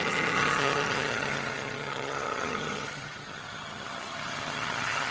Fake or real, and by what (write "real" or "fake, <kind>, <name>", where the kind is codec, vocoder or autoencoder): fake, vocoder, HiFi-GAN